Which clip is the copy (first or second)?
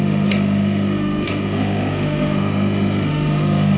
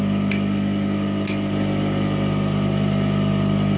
first